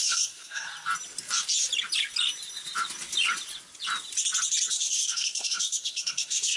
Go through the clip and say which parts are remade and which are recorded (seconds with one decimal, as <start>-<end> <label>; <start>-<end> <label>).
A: 0.0-0.7 remade; 0.7-4.7 recorded; 4.7-6.6 remade

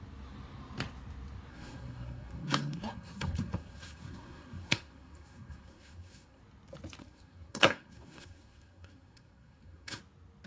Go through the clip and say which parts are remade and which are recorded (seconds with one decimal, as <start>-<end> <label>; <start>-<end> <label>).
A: 0.0-1.5 recorded; 1.5-6.4 remade; 6.4-7.0 recorded; 7.0-10.0 remade; 10.0-10.5 recorded